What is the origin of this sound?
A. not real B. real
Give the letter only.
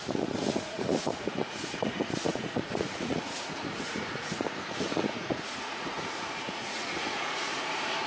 A